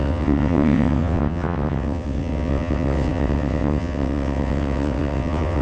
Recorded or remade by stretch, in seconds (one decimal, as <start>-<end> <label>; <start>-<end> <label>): 0.0-5.6 remade

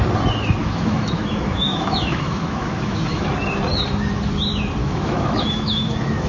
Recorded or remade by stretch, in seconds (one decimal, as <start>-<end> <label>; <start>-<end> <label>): 0.0-0.6 recorded; 0.6-3.3 remade; 3.3-4.8 recorded; 4.8-6.3 remade

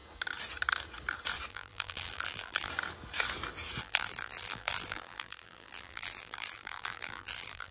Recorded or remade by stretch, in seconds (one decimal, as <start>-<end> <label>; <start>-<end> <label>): 0.0-1.5 recorded; 1.5-2.7 remade; 2.7-3.8 recorded; 3.8-7.7 remade

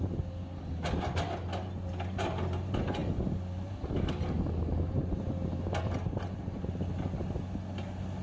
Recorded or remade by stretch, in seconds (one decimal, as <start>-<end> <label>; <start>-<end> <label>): 0.0-8.2 recorded

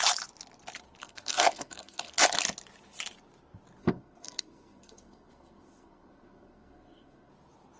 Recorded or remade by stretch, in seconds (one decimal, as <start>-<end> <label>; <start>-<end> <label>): 0.0-1.0 recorded; 1.0-2.1 remade; 2.1-3.8 recorded; 3.8-7.3 remade; 7.3-7.8 recorded

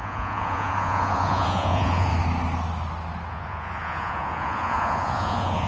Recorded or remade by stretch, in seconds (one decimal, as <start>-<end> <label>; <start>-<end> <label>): 0.0-2.1 remade; 2.1-3.3 recorded; 3.3-5.7 remade

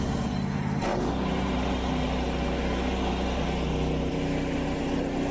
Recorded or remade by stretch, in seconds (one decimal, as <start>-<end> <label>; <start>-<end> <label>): 0.0-5.3 recorded

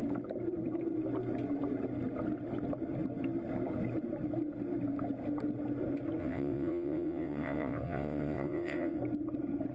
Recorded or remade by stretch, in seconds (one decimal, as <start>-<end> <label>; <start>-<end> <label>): 0.0-6.2 recorded; 6.2-9.0 remade; 9.0-9.7 recorded